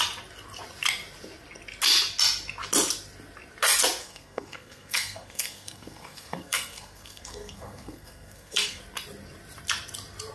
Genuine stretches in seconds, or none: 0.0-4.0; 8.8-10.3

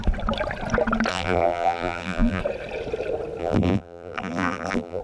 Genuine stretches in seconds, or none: 0.0-1.1; 2.4-3.4

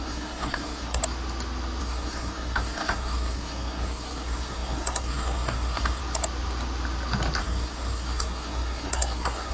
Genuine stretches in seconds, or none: 1.0-1.8; 6.0-7.4